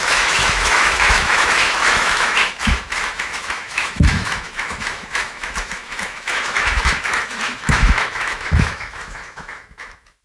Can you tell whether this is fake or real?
fake